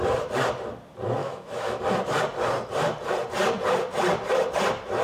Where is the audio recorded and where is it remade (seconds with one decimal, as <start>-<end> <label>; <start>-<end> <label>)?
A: 0.0-1.2 recorded; 1.2-1.8 remade; 1.8-5.0 recorded